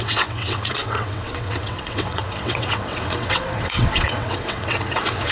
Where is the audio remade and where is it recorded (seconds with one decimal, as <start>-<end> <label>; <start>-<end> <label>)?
0.0-5.3 remade